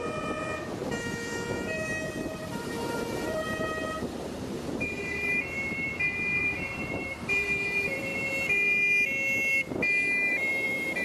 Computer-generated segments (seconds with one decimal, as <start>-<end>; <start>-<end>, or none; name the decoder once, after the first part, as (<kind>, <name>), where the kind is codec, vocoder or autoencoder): 0.0-5.9 (vocoder, BigVGAN v2); 6.4-8.1; 10.3-11.0